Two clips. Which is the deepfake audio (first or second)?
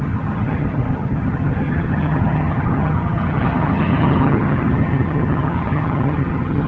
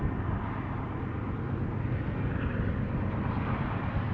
first